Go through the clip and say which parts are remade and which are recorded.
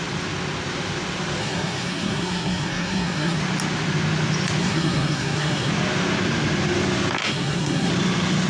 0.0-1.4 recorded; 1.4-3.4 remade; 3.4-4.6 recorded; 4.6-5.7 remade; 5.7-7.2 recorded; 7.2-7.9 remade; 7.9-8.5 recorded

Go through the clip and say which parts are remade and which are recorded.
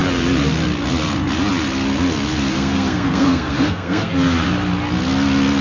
0.0-2.5 recorded; 2.5-4.1 remade; 4.1-5.6 recorded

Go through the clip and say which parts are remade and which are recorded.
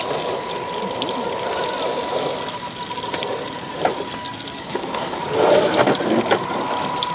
0.0-4.6 recorded; 4.6-5.2 remade; 5.2-7.1 recorded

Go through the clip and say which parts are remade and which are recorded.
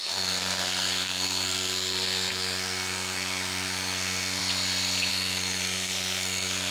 0.0-4.4 remade; 4.4-5.1 recorded; 5.1-6.7 remade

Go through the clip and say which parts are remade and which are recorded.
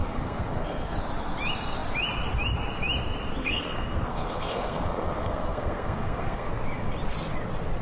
0.0-1.0 remade; 1.0-3.4 recorded; 3.4-6.5 remade; 6.5-7.8 recorded